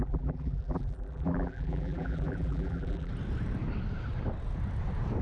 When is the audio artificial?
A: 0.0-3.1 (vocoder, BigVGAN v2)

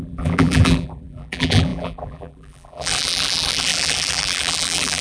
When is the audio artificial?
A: 0.0-5.0 (vocoder, BigVGAN v2)

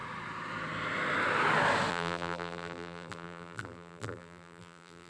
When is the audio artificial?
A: 1.9-5.1 (vocoder, BigVGAN v2)

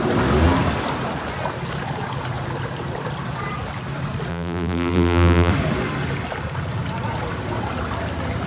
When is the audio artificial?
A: 4.3-5.5 (vocoder, BigVGAN v2)

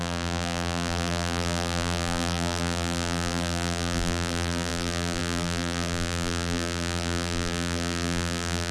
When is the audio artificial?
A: 0.0-8.7 (vocoder, BigVGAN v2)

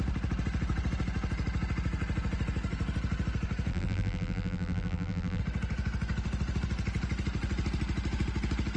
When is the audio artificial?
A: 3.7-5.4 (vocoder, BigVGAN v2)